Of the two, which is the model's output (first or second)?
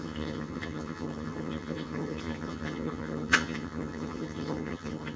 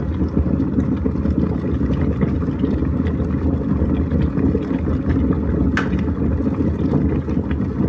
first